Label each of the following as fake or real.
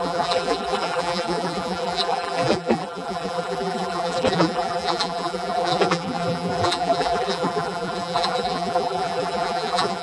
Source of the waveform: fake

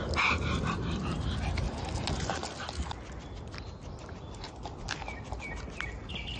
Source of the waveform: real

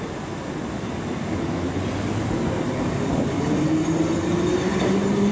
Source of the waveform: real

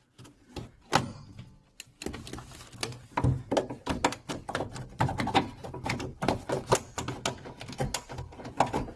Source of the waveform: real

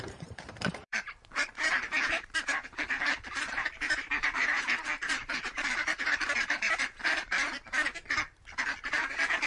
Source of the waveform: fake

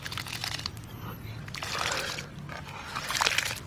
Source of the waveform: fake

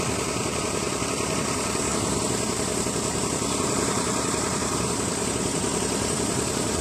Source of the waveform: fake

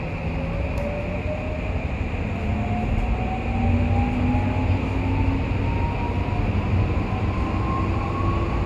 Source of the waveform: real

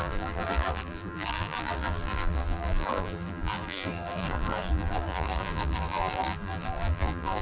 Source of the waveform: fake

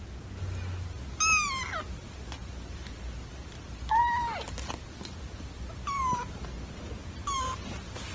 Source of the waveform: real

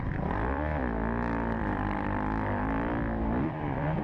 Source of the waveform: fake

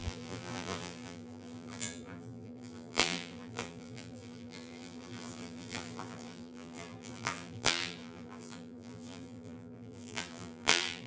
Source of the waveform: fake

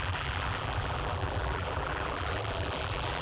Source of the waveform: fake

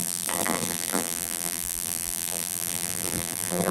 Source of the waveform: fake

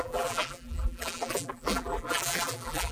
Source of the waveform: fake